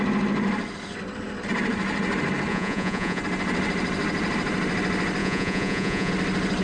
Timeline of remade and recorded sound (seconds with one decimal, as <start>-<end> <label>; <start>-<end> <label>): 0.0-2.5 recorded; 2.5-3.2 remade; 3.2-5.2 recorded; 5.2-6.1 remade; 6.1-6.6 recorded